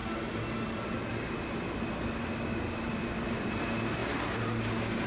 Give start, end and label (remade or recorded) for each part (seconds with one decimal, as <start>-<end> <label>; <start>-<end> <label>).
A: 0.0-5.1 recorded